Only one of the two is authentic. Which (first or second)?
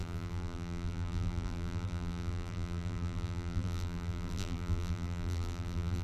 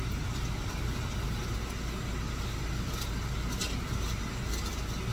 second